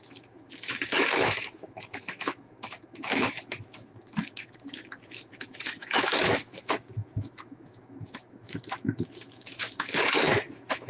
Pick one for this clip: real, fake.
fake